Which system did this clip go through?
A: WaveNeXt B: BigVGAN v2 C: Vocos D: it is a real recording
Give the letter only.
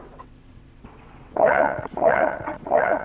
A